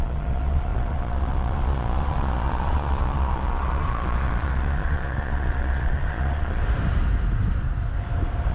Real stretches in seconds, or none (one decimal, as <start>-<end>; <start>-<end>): 6.6-8.5

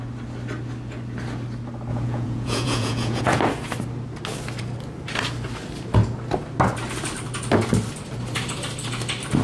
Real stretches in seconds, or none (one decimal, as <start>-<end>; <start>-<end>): 0.0-1.9; 3.4-9.4

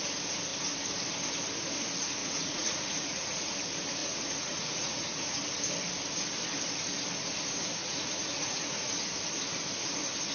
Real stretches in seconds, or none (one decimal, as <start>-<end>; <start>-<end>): 0.0-2.2; 3.5-4.0; 5.4-7.8; 8.9-10.3

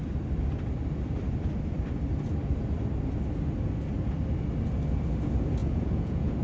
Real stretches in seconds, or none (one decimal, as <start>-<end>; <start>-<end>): 0.0-5.6